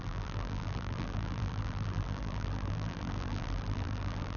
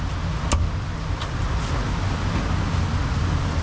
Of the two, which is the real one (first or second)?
second